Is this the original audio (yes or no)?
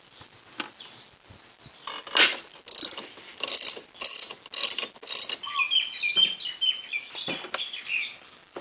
yes